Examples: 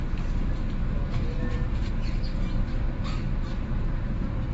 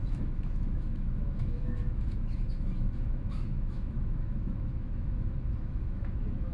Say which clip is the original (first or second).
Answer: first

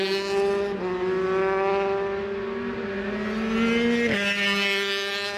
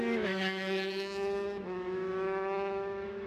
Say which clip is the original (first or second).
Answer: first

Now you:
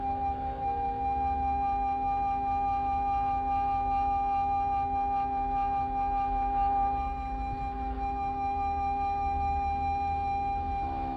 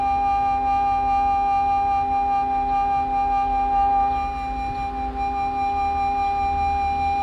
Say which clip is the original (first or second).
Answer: second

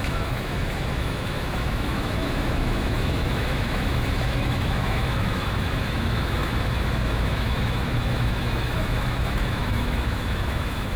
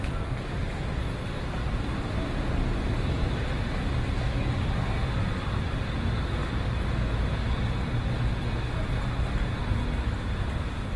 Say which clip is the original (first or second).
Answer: second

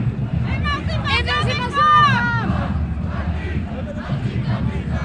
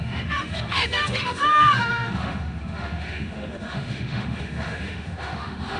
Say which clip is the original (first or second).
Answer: first